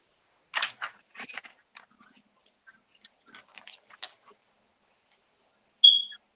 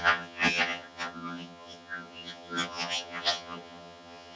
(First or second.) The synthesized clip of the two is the second